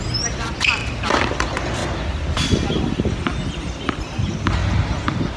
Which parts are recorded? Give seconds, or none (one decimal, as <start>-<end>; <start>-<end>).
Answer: 0.8-1.3; 1.8-2.3; 4.6-5.4